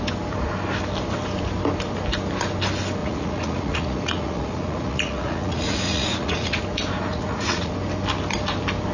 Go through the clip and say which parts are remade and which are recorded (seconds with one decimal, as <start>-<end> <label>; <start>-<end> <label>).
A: 0.0-3.0 recorded; 3.0-6.6 remade; 6.6-7.1 recorded; 7.1-7.7 remade; 7.7-8.9 recorded